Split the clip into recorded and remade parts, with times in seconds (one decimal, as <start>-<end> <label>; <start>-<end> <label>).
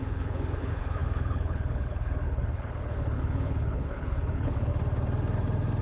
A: 0.0-4.7 remade; 4.7-5.8 recorded